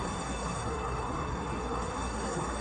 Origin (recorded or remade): remade